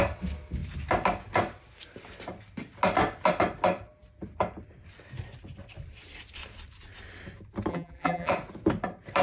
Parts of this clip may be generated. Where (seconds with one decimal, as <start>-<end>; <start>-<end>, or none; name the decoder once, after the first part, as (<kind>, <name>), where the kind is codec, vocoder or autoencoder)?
7.7-8.3 (vocoder, BigVGAN v2)

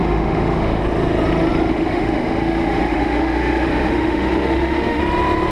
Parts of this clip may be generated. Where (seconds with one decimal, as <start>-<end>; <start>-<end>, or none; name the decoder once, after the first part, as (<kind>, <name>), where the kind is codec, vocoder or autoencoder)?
0.0-0.8 (autoencoder, DAC-VAE); 1.7-5.0

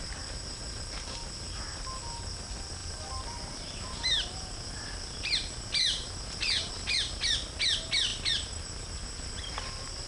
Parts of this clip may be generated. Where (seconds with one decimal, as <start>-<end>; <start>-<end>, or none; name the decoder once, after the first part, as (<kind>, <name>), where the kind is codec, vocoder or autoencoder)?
2.8-6.7 (vocoder, BigVGAN v2)

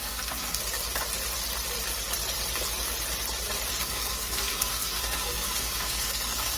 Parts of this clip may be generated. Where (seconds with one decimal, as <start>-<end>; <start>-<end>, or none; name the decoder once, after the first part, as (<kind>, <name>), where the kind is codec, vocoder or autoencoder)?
0.0-0.6 (codec, SNAC); 3.7-6.6

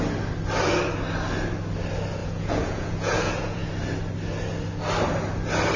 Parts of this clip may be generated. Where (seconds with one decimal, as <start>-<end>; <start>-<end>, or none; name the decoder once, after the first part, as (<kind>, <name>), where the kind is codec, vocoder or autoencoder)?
2.2-3.7 (vocoder, Vocos)